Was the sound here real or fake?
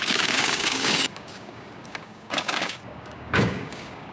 fake